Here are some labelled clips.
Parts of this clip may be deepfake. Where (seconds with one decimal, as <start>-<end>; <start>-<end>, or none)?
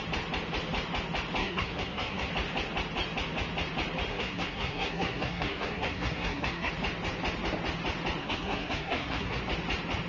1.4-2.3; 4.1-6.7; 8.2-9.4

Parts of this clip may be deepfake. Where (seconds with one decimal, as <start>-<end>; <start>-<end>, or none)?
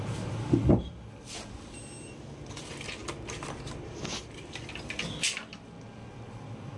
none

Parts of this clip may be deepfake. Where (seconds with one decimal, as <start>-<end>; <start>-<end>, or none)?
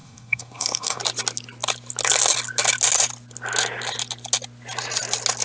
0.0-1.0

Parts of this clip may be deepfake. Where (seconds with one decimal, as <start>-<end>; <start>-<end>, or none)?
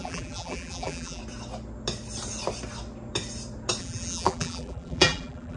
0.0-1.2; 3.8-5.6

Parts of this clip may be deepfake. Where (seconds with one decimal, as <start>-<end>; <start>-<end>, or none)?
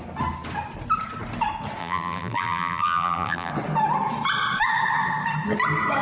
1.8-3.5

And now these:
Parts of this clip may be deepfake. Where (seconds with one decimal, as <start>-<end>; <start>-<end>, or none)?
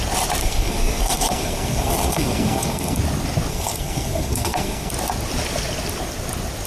0.4-3.0; 3.5-4.9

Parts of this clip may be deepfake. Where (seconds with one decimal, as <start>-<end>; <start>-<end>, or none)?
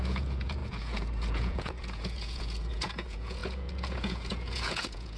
0.0-5.2